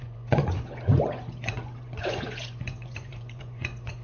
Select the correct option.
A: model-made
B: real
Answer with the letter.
A